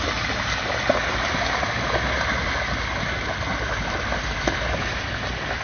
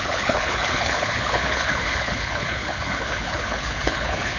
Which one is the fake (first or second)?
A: second